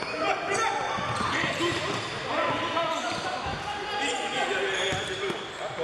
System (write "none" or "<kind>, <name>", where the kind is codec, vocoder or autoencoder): none